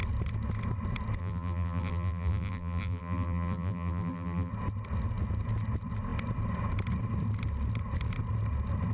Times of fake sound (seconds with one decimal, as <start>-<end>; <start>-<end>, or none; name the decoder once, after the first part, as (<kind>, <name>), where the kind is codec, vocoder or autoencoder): 1.2-4.5 (vocoder, BigVGAN v2)